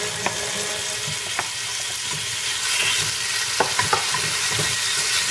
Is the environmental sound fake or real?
real